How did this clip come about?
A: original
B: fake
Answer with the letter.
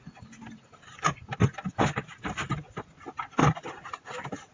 A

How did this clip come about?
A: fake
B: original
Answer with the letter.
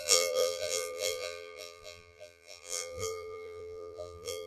A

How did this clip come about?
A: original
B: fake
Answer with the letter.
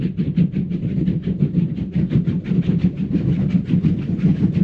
A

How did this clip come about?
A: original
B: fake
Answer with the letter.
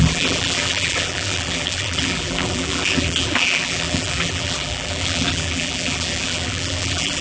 B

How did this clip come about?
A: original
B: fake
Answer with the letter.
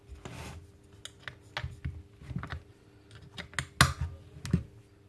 A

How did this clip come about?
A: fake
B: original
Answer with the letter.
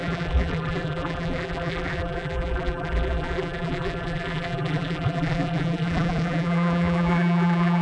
A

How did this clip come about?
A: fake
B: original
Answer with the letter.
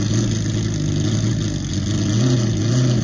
B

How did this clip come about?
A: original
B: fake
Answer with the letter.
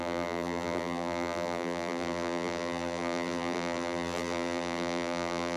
B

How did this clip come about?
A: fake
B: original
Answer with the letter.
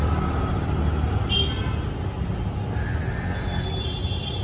B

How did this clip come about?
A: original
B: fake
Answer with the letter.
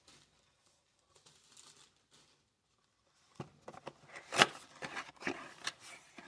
B